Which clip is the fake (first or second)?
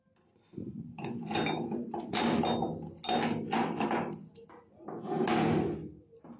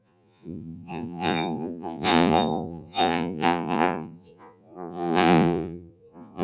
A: second